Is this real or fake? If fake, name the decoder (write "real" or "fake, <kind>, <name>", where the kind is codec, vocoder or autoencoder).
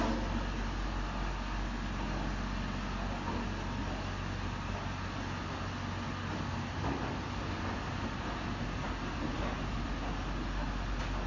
real